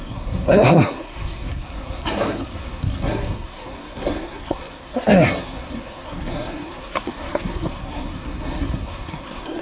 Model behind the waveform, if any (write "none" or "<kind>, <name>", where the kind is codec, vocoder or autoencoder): codec, SNAC